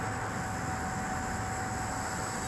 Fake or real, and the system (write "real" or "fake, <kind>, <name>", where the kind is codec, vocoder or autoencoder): real